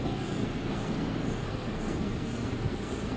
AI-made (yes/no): yes